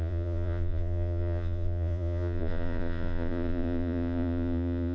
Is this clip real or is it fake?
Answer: fake